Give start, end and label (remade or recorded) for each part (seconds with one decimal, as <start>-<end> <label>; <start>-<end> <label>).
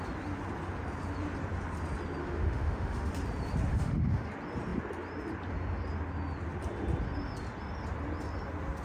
0.0-2.2 recorded; 2.2-3.1 remade; 3.1-3.7 recorded; 3.7-4.3 remade; 4.3-8.8 recorded